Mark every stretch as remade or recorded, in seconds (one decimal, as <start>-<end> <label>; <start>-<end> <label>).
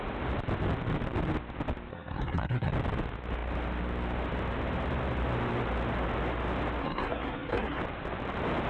0.0-1.9 recorded; 1.9-2.7 remade; 2.7-6.8 recorded; 6.8-7.8 remade; 7.8-8.7 recorded